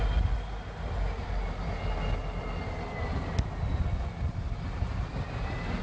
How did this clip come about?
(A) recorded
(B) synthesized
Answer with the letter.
A